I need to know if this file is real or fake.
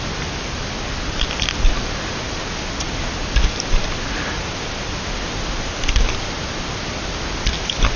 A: real